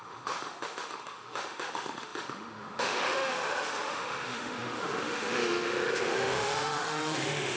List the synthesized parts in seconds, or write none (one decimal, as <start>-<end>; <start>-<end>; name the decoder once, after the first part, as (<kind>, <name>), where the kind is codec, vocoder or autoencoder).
0.0-7.6 (autoencoder, DAC-VAE)